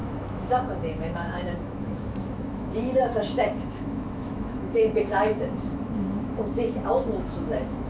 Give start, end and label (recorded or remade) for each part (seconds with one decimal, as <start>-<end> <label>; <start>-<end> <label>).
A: 0.0-7.9 remade